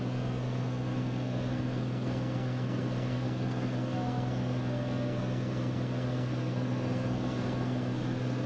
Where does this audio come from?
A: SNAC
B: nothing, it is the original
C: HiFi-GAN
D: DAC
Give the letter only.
A